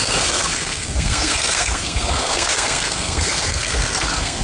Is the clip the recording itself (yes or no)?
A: no